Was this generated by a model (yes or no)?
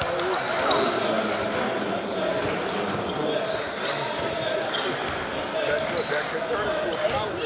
no